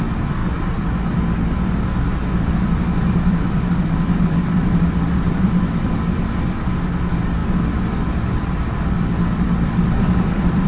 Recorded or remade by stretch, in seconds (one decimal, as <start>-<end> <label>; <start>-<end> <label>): 0.0-0.4 recorded; 0.4-1.0 remade; 1.0-2.1 recorded; 2.1-6.4 remade; 6.4-8.7 recorded; 8.7-10.7 remade